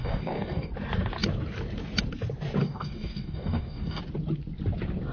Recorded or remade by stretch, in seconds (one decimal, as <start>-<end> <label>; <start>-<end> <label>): 0.0-0.7 remade; 0.7-2.6 recorded; 2.6-4.0 remade; 4.0-5.1 recorded